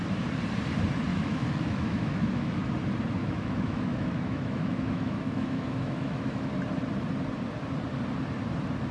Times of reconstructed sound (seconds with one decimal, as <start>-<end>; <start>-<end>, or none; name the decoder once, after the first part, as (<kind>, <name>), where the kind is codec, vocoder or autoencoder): 1.1-2.7 (autoencoder, DAC-VAE); 3.2-6.5